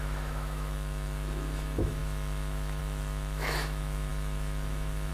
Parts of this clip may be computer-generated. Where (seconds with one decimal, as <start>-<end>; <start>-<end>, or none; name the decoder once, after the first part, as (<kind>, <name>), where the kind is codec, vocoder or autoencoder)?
0.0-5.1 (autoencoder, DAC-VAE)

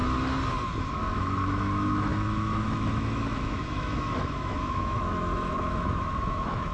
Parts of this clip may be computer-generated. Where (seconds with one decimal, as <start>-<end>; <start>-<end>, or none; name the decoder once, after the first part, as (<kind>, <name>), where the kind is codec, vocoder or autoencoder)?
0.8-6.7 (autoencoder, DAC-VAE)

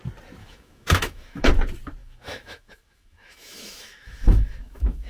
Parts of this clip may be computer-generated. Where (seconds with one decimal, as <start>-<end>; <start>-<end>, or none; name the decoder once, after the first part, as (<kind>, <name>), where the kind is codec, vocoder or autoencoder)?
0.4-1.5 (autoencoder, DAC-VAE); 2.0-5.1

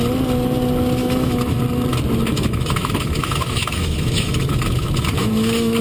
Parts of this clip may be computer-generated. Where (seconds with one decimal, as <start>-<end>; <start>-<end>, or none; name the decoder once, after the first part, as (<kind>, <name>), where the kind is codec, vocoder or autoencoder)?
1.0-1.6 (autoencoder, DAC-VAE); 2.3-5.8

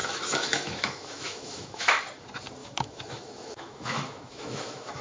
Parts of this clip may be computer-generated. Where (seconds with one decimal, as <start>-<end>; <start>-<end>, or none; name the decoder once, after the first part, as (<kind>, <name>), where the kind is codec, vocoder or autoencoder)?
0.0-2.0 (autoencoder, DAC-VAE); 2.6-5.0

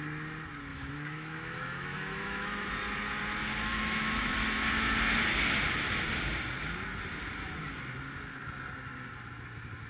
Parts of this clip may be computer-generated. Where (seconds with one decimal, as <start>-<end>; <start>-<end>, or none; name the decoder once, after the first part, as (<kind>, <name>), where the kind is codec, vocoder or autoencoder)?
0.7-2.7 (autoencoder, DAC-VAE); 3.7-4.3